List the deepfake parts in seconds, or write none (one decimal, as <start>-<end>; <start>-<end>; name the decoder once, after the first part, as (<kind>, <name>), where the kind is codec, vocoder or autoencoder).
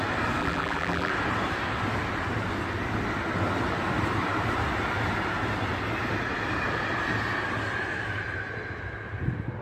0.4-1.1 (vocoder, BigVGAN v2)